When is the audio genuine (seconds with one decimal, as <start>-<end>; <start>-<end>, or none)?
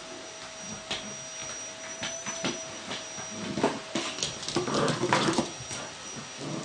0.0-6.6